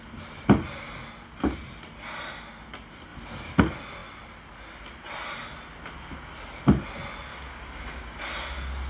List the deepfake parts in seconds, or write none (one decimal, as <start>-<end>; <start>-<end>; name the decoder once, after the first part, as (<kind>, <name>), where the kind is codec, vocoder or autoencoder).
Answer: 7.3-8.2 (codec, DAC)